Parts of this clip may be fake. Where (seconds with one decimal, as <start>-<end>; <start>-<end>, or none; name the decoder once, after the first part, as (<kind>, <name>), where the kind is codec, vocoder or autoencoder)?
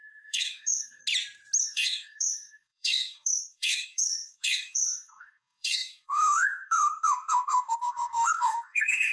0.0-1.0 (codec, DAC); 1.6-9.1